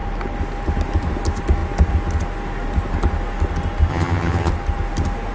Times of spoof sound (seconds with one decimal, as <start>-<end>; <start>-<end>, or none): 3.9-4.5